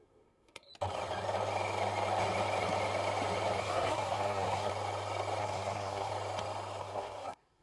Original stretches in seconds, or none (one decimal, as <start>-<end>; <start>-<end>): 0.7-3.6; 4.7-5.4; 6.1-6.8